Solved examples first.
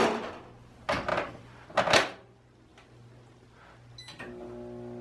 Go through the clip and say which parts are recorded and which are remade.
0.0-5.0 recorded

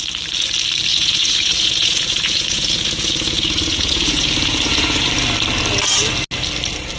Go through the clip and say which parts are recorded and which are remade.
0.0-0.9 recorded; 0.9-5.1 remade; 5.1-7.0 recorded

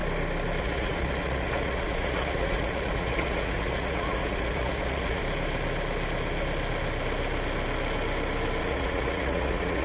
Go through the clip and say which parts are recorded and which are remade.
0.0-0.6 recorded; 0.6-5.2 remade; 5.2-8.6 recorded; 8.6-9.8 remade

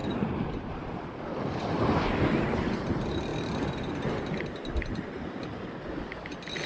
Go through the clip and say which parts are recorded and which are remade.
0.0-6.7 recorded

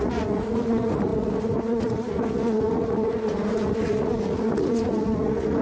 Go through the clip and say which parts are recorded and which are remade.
0.0-5.6 remade

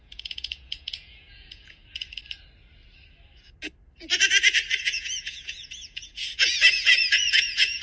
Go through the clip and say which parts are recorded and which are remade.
0.0-1.8 remade; 1.8-4.8 recorded; 4.8-7.8 remade